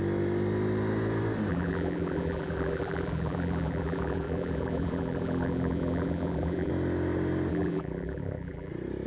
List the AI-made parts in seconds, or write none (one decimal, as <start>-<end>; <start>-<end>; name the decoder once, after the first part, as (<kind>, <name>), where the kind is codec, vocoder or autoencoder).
1.5-6.7 (vocoder, BigVGAN v2); 7.5-8.7